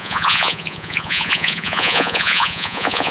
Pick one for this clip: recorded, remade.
remade